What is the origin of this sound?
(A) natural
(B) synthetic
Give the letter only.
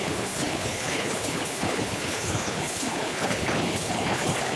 B